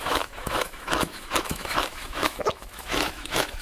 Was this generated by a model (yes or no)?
yes